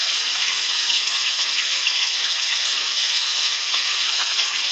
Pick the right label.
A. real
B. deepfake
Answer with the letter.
B